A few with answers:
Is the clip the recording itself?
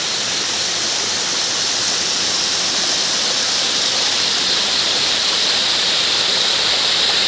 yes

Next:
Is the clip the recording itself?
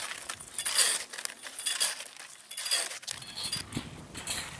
yes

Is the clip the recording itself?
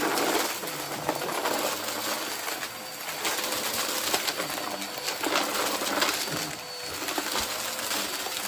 yes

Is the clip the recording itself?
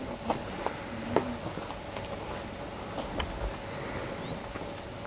yes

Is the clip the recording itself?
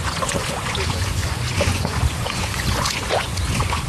no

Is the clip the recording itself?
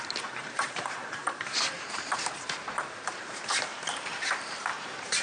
no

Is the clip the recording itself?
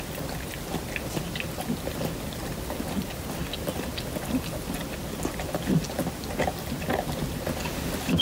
yes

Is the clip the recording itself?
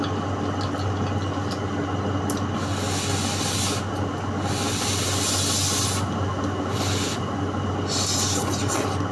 yes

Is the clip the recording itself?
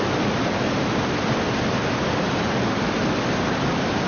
yes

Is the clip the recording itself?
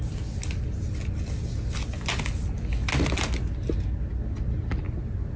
yes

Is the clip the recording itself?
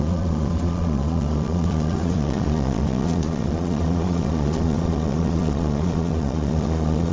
no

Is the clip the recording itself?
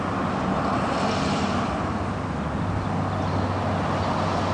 yes